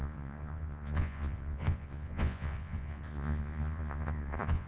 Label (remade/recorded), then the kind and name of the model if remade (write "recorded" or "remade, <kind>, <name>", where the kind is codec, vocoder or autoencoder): remade, vocoder, Vocos